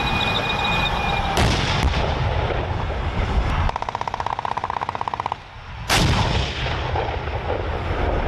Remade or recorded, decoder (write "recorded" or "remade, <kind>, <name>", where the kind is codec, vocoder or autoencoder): recorded